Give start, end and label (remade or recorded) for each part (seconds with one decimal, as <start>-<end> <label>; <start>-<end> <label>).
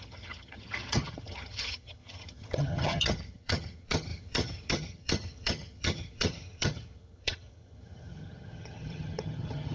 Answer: 0.0-9.7 remade